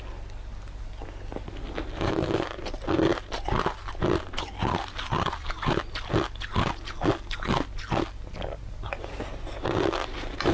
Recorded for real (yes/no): yes